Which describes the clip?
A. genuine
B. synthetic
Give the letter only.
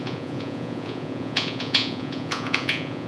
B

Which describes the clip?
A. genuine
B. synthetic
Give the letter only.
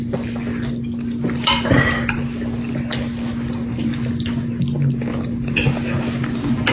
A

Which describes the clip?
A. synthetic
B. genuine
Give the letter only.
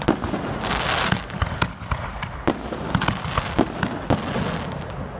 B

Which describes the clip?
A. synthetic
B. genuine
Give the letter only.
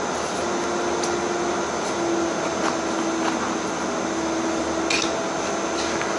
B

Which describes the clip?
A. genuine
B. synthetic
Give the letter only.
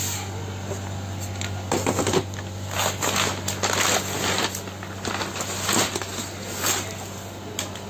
A